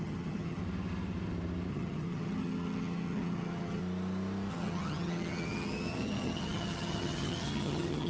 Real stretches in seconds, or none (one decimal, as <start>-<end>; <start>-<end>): 0.6-1.7; 3.8-4.5